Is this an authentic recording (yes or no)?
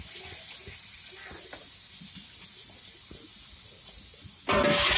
yes